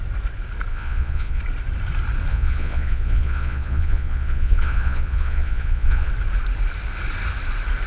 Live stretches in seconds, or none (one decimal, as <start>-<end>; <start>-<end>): 0.0-0.7; 1.4-2.3; 6.1-7.9